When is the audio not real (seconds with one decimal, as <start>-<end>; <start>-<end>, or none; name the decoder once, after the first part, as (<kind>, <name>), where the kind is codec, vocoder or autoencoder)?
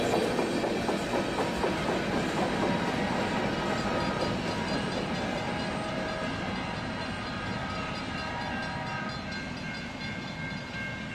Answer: none